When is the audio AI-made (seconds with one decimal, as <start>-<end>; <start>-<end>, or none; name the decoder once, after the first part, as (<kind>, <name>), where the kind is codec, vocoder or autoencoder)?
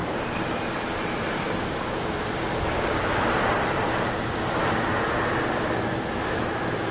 0.0-3.5 (vocoder, BigVGAN v2)